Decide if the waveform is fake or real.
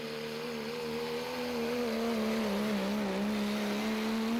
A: real